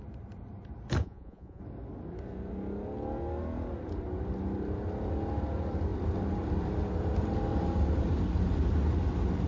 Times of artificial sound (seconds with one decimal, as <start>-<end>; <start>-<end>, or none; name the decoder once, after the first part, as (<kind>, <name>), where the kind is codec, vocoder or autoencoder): 1.0-1.6 (vocoder, Vocos)